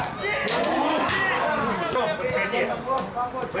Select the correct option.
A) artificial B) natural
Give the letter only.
B